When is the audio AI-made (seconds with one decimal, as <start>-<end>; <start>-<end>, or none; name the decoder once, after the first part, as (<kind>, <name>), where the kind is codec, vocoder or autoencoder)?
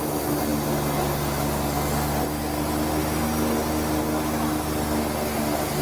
none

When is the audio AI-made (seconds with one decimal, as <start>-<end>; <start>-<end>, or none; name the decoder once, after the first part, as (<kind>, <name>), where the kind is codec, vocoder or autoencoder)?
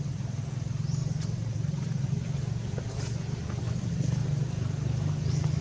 0.0-4.2 (vocoder, BigVGAN v2)